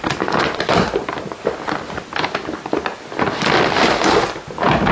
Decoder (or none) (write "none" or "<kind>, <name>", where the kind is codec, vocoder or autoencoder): none